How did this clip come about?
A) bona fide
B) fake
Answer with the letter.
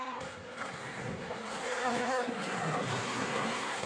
B